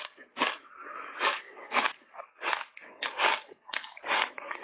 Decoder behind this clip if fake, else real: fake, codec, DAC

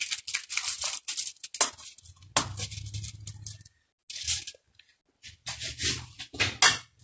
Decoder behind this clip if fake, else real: real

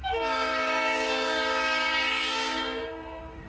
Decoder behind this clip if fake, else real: fake, codec, DAC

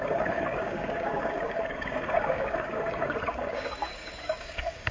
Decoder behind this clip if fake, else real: fake, codec, DAC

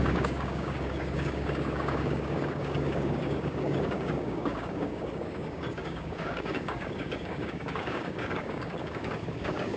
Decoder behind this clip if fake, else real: fake, codec, DAC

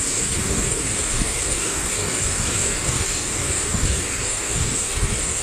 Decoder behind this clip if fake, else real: fake, codec, DAC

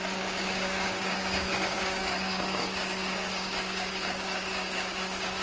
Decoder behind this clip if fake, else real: fake, codec, DAC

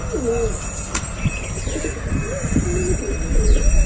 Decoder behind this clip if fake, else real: real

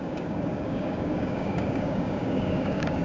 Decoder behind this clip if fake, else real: fake, codec, DAC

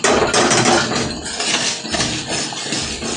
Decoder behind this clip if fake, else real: real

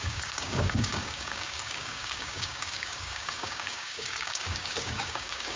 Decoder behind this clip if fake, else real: fake, codec, DAC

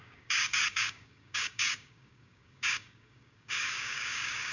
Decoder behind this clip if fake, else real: fake, codec, DAC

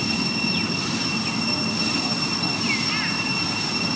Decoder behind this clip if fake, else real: real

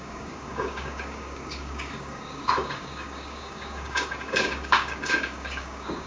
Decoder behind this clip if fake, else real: fake, codec, DAC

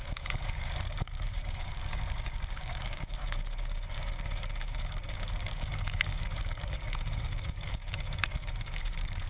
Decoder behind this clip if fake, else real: fake, codec, DAC